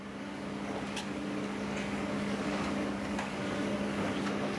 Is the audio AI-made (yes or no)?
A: yes